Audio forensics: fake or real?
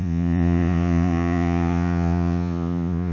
fake